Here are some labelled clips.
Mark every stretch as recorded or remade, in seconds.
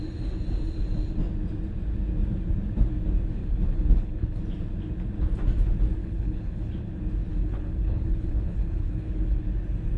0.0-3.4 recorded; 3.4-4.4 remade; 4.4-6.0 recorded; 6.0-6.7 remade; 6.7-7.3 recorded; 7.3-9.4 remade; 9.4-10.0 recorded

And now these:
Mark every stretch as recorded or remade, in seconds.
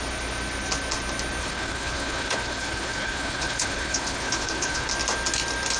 0.0-1.4 recorded; 1.4-4.9 remade; 4.9-5.8 recorded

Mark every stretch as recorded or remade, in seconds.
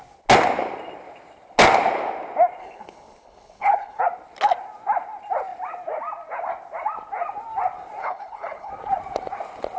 0.0-2.6 recorded; 2.6-4.0 remade; 4.0-8.0 recorded; 8.0-8.7 remade; 8.7-9.8 recorded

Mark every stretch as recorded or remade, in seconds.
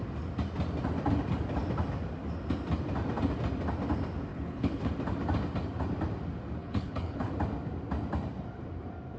0.0-4.3 recorded; 4.3-4.9 remade; 4.9-6.6 recorded; 6.6-7.3 remade; 7.3-9.2 recorded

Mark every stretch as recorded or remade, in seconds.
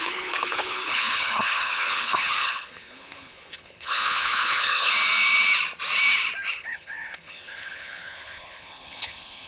0.0-4.9 remade; 4.9-6.5 recorded; 6.5-9.5 remade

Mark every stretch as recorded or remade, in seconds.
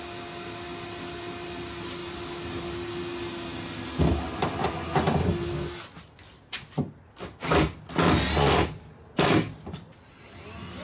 0.0-10.8 recorded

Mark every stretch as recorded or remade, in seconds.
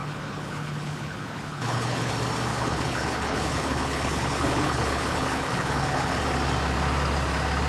0.0-2.1 remade; 2.1-2.5 recorded; 2.5-6.2 remade; 6.2-7.7 recorded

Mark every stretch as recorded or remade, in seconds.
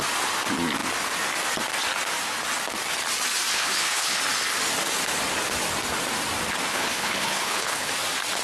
0.0-3.5 recorded; 3.5-4.2 remade; 4.2-6.7 recorded; 6.7-7.9 remade; 7.9-8.4 recorded